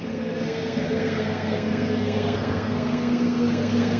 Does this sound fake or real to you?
fake